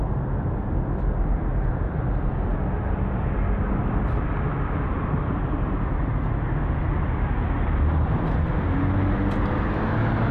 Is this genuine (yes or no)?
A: yes